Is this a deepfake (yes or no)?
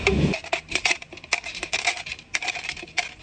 yes